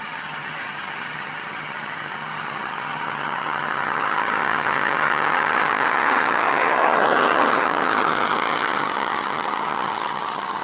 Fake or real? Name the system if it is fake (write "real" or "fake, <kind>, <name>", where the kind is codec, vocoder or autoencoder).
fake, vocoder, HiFi-GAN